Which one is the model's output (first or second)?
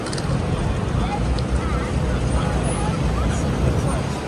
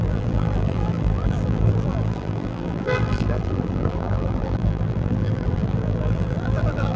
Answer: second